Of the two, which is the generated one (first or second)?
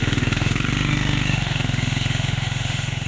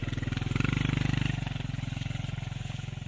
first